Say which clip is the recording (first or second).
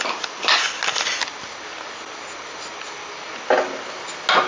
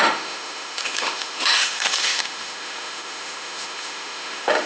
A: first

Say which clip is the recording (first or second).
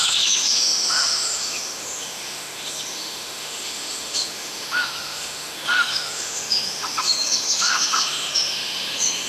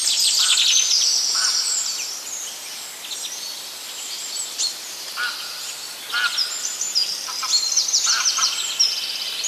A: second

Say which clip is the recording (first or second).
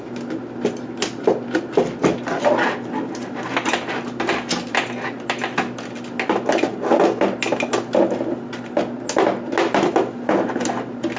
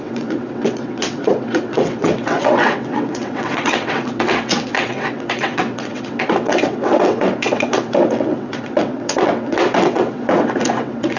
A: first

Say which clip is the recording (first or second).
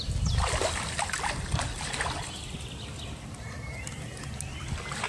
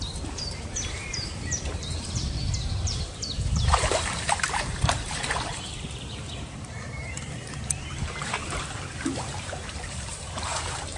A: first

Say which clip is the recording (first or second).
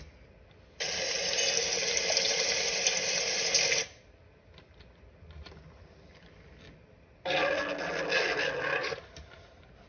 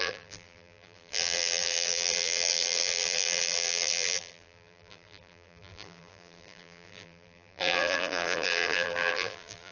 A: first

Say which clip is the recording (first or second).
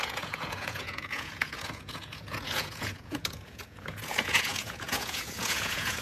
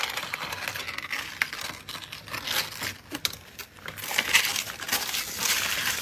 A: second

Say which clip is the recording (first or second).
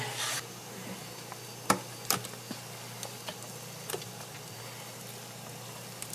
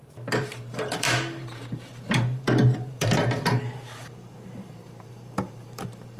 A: first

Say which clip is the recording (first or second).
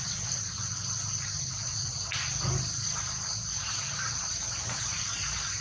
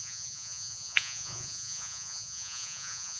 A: first